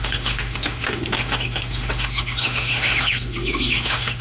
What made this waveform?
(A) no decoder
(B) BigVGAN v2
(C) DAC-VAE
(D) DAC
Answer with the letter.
C